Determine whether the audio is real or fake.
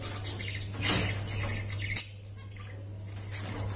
real